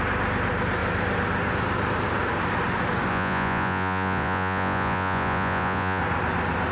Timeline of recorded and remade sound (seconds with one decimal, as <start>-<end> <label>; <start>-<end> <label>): 0.0-3.1 recorded; 3.1-6.0 remade; 6.0-6.7 recorded